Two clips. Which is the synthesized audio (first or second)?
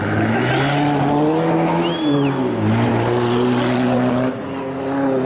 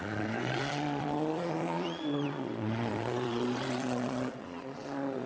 second